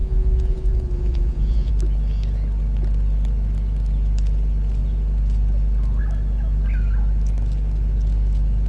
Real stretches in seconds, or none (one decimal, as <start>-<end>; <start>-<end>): 1.7-8.7